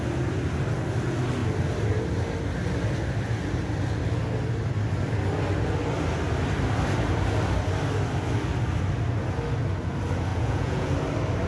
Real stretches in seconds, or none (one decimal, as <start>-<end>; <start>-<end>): 0.0-10.3; 10.9-11.5